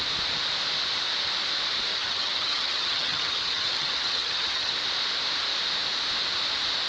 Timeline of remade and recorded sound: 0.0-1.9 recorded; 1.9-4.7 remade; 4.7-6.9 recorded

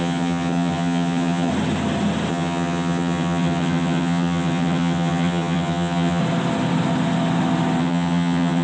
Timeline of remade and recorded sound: 0.0-1.5 remade; 1.5-2.3 recorded; 2.3-6.2 remade; 6.2-7.8 recorded; 7.8-8.6 remade